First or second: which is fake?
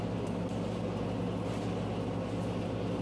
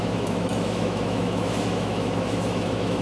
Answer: second